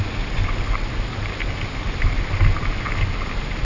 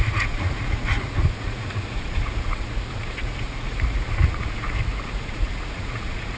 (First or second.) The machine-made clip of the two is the second